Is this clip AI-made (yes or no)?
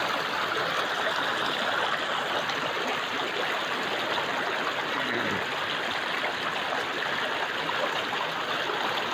no